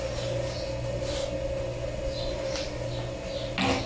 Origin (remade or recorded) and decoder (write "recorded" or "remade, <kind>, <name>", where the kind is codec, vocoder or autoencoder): recorded